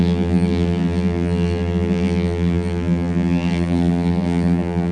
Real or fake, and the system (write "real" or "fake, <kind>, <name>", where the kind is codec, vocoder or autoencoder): fake, vocoder, BigVGAN v2